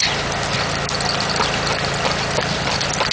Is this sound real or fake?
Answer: real